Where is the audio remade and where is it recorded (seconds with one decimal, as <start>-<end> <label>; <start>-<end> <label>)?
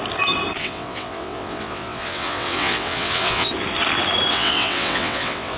0.0-0.6 recorded; 0.6-3.5 remade; 3.5-4.3 recorded; 4.3-5.6 remade